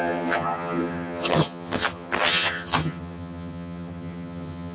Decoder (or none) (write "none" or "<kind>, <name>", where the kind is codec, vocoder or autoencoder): vocoder, HiFi-GAN